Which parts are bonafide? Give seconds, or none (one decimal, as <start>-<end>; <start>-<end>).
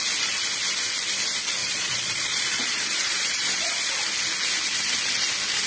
0.0-1.6; 3.9-5.7